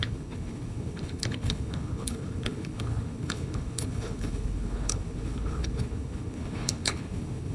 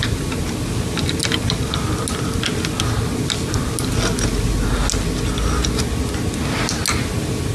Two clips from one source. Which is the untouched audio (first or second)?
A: second